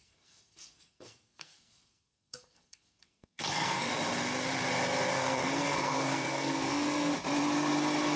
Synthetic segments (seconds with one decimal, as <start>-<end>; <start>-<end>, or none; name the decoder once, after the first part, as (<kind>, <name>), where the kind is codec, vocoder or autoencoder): 0.0-3.9 (codec, SNAC); 5.1-7.1